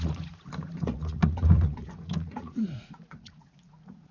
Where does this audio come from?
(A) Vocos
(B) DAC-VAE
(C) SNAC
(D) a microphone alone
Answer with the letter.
A